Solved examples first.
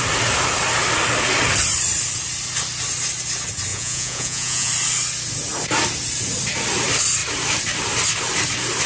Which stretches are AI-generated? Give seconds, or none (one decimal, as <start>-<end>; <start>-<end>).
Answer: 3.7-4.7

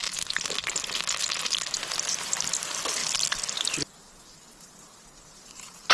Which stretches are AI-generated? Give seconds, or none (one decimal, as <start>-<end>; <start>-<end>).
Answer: none

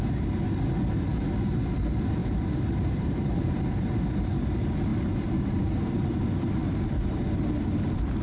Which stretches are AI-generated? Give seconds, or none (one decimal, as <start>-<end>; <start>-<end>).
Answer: 2.2-3.6; 4.9-5.7

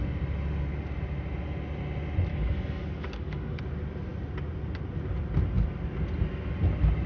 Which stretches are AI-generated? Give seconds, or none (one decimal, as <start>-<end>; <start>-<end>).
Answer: 2.3-3.6

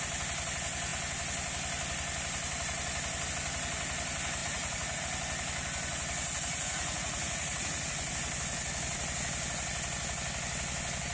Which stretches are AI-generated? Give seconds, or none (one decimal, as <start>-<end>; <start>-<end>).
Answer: 4.4-5.0; 6.5-8.1

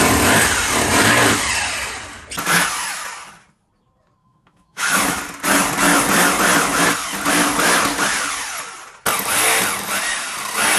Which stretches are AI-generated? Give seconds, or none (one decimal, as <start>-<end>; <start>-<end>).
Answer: 4.2-5.2

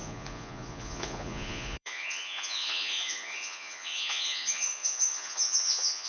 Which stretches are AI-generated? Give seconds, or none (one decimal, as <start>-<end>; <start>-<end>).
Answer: 0.0-6.1